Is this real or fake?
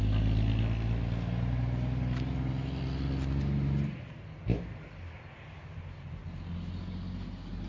real